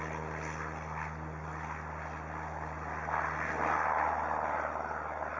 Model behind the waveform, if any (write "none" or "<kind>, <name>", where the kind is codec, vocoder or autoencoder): none